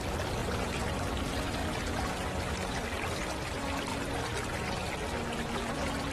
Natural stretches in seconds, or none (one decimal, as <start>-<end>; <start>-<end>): 0.0-6.1